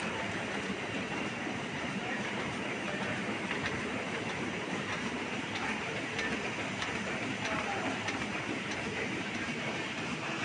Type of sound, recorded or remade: remade